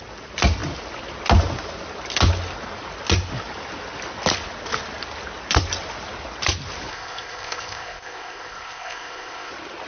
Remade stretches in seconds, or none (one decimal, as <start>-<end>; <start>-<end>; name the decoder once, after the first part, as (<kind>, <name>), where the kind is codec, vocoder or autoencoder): 6.9-9.5 (codec, ZipCodec)